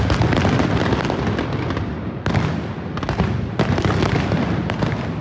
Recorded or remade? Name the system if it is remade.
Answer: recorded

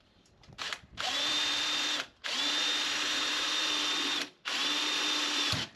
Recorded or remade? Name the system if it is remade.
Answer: remade, vocoder, BigVGAN v2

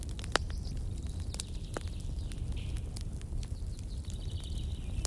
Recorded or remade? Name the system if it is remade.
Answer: recorded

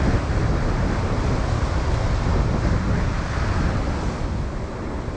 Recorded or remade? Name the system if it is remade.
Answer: recorded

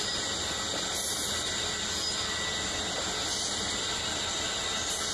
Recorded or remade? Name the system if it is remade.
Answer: recorded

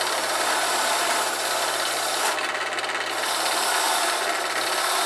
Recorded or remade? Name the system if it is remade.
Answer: recorded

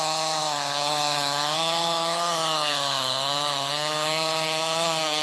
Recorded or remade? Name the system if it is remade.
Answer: remade, codec, HILCodec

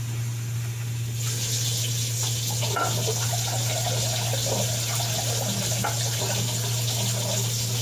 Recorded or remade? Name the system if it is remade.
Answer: recorded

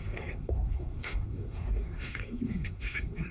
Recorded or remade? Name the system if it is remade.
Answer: remade, codec, SNAC